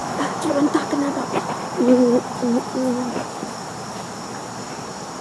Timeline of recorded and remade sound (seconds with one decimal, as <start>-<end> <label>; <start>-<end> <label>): 0.0-0.5 remade; 0.5-5.2 recorded